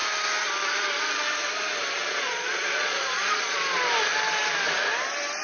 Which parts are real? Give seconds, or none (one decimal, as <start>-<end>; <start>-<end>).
0.0-2.0; 3.6-5.4